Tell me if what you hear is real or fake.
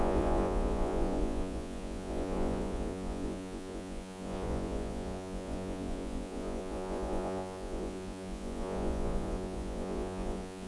fake